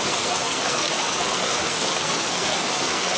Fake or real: fake